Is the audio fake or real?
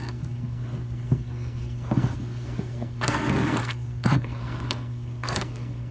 fake